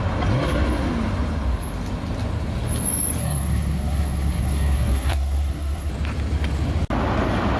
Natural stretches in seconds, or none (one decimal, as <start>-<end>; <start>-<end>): 0.0-3.2; 5.9-7.6